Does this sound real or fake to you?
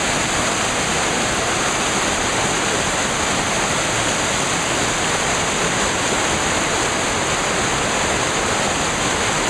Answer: real